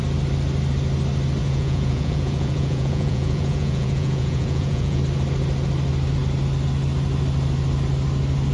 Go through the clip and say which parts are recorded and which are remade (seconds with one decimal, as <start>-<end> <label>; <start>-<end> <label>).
0.0-1.4 recorded; 1.4-5.0 remade; 5.0-8.5 recorded